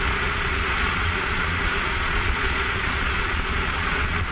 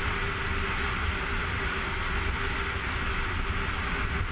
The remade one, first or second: first